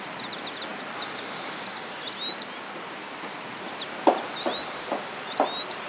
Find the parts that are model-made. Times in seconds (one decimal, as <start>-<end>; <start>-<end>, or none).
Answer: none